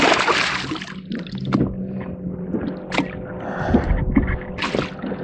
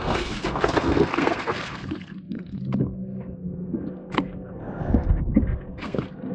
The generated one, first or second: second